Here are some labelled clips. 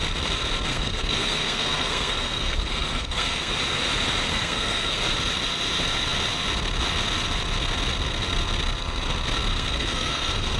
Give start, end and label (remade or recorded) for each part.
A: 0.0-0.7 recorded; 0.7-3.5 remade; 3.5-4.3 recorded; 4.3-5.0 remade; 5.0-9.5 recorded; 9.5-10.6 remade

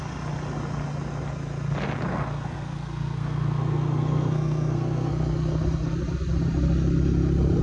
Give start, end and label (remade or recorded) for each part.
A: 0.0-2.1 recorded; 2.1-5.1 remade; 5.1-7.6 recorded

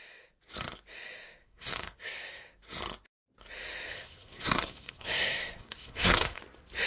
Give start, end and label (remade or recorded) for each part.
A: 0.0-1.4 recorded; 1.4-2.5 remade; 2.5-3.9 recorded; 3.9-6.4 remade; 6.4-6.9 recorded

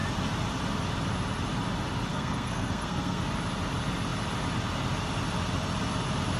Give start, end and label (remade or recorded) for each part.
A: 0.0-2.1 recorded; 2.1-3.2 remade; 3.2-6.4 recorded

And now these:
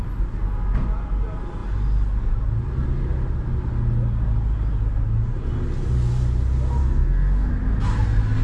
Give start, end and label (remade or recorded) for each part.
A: 0.0-6.8 recorded; 6.8-7.5 remade; 7.5-8.4 recorded

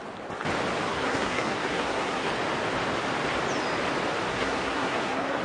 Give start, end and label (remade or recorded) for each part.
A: 0.0-0.9 recorded; 0.9-2.3 remade; 2.3-4.3 recorded; 4.3-5.4 remade